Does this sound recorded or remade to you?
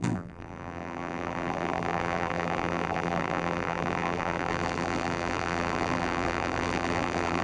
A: remade